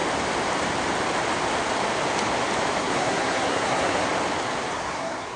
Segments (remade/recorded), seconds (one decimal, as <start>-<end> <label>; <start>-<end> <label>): 0.0-2.8 recorded; 2.8-4.1 remade; 4.1-4.7 recorded; 4.7-5.4 remade